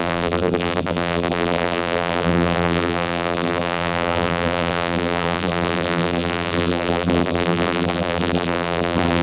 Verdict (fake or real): fake